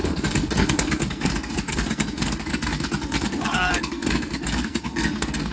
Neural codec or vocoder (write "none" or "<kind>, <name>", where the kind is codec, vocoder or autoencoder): codec, SNAC